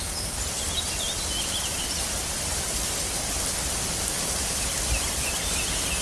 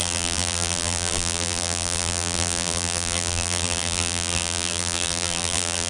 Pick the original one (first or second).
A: first